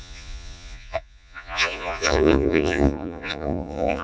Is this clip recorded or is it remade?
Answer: remade